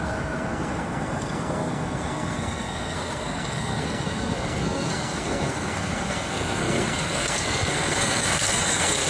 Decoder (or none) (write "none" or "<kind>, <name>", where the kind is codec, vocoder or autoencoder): codec, SNAC